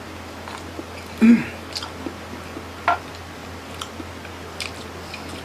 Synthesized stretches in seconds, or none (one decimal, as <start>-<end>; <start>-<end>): none